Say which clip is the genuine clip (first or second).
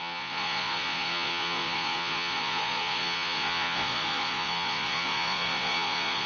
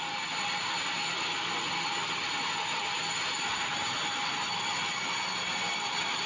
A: second